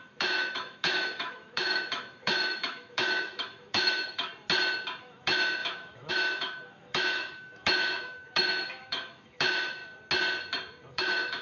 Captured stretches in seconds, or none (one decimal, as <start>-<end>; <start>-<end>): 4.3-5.0; 9.8-10.9